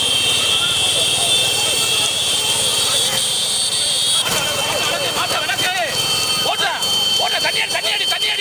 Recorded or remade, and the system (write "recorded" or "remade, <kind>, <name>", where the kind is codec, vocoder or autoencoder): remade, vocoder, BigVGAN v2